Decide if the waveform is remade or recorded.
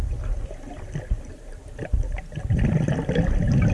recorded